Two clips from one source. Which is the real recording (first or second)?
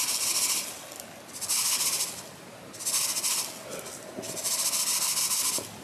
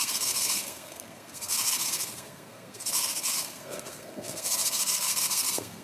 first